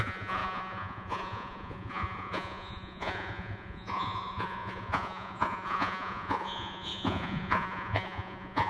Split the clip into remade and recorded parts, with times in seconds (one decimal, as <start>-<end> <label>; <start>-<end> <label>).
0.0-8.7 remade